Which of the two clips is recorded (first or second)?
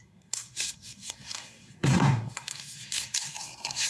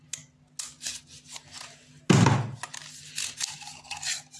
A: second